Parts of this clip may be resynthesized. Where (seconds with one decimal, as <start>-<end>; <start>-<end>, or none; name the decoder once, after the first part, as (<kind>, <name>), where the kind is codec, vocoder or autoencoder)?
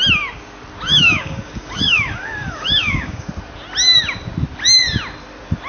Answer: 0.9-3.3 (codec, DAC)